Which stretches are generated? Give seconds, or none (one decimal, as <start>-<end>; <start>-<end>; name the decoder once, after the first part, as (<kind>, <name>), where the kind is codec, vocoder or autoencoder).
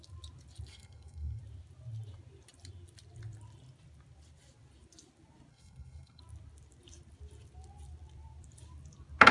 0.7-1.4 (codec, SNAC); 5.5-6.2